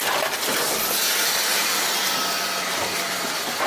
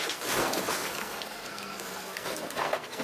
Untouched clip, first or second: first